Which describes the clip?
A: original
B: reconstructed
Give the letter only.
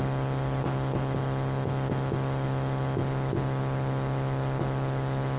A